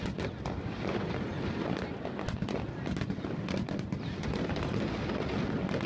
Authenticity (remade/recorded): recorded